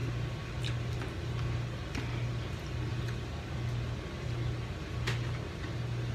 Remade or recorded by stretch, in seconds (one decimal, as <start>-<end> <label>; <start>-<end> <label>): 0.0-6.1 recorded